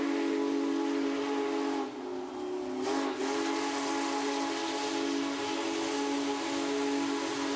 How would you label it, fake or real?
real